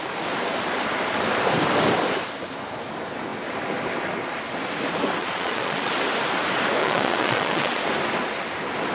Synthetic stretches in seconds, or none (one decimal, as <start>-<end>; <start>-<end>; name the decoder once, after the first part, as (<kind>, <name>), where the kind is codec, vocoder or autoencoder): 5.2-5.9 (vocoder, Vocos); 6.8-7.8